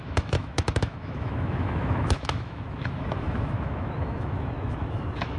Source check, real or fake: fake